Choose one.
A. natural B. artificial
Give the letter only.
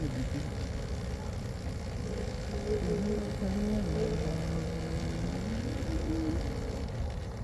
A